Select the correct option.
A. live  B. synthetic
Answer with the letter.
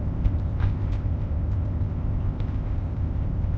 B